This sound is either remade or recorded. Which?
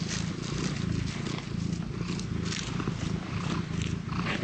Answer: recorded